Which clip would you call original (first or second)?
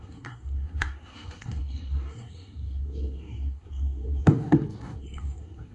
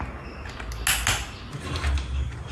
second